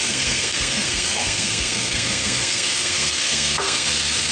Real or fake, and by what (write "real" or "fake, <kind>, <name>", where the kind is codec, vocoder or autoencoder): fake, codec, SNAC